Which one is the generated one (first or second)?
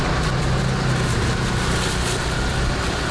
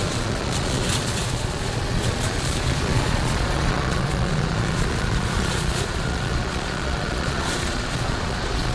second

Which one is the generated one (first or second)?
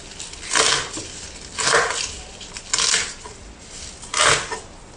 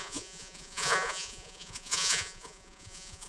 second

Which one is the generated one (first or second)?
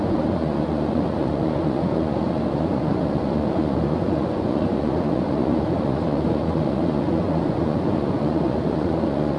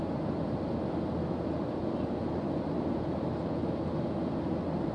first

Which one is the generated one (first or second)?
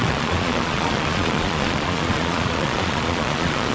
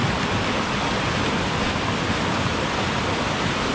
first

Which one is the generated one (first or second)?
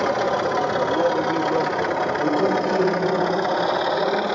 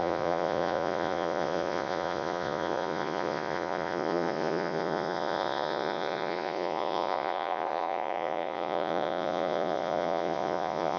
second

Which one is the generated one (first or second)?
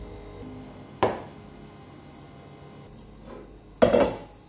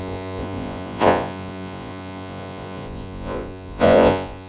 second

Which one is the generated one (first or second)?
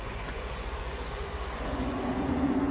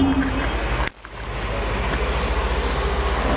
first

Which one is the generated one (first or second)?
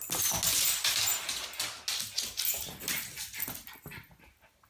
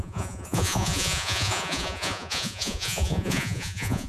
second